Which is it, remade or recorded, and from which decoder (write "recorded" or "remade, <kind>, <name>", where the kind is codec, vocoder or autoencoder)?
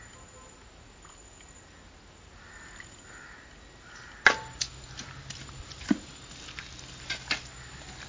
recorded